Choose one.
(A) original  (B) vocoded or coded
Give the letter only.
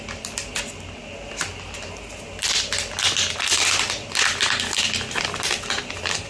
A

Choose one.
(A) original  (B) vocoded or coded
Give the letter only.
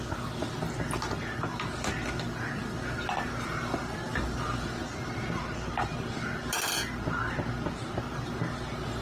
A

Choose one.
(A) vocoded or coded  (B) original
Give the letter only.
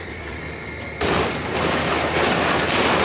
A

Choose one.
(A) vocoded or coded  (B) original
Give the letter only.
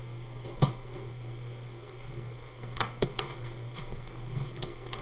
A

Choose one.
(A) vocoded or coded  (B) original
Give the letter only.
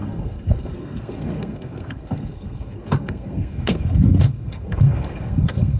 A